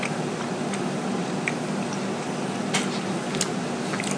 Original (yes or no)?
yes